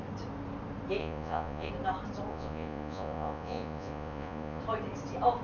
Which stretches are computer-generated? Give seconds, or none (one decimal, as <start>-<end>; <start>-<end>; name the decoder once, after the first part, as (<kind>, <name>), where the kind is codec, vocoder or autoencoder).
1.0-1.7 (vocoder, Vocos); 2.3-4.6